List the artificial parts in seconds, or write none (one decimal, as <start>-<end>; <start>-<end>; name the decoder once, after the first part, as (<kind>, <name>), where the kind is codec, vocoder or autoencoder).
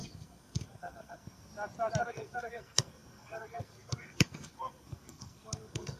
0.0-1.5 (codec, SNAC); 2.0-6.0